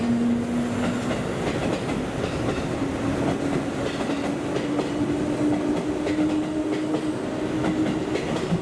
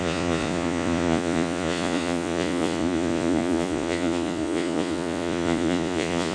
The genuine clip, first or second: first